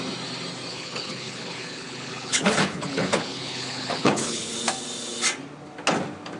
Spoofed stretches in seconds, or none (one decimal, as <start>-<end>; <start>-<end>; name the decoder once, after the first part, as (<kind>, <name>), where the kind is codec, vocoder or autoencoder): 0.7-4.5 (codec, HILCodec)